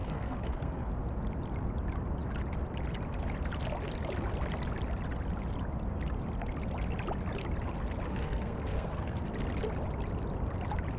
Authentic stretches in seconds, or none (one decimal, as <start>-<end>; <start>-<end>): 0.9-8.1; 9.2-11.0